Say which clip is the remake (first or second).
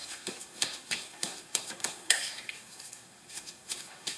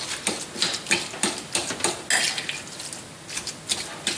first